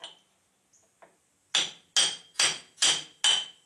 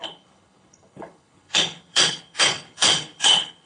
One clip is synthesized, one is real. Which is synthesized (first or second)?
second